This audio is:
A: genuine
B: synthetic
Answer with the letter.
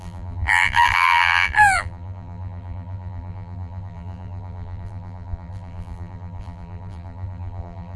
B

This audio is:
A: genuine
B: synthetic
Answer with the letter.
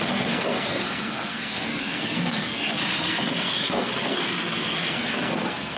B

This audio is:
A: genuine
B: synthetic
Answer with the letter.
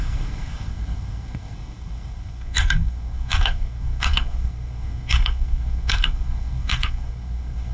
B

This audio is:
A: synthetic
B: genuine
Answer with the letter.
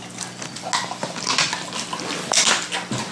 B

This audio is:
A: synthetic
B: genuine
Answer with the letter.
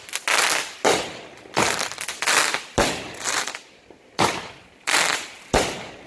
A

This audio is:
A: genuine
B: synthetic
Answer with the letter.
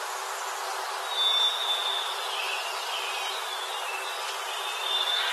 A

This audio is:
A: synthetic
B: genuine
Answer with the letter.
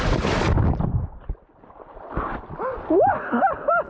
A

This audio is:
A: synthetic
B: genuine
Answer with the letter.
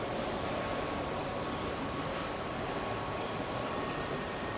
A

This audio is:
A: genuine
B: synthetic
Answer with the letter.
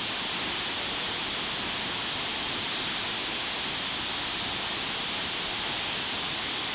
B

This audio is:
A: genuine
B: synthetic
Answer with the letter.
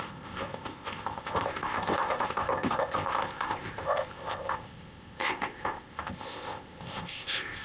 B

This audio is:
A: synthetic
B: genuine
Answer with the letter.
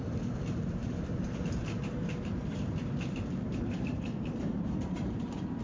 A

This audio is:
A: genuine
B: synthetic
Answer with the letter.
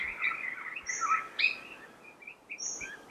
A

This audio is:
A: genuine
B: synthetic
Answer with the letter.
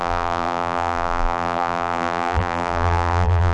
B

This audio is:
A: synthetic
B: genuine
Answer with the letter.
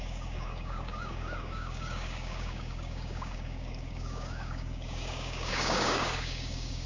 A